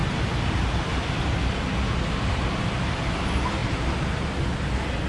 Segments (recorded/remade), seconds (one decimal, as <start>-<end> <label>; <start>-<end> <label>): 0.0-3.6 recorded; 3.6-4.3 remade; 4.3-5.1 recorded